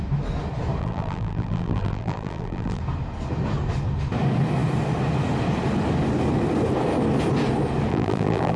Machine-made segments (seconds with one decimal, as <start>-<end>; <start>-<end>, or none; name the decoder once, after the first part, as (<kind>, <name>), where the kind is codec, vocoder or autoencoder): 0.8-2.8 (vocoder, BigVGAN v2); 7.9-8.6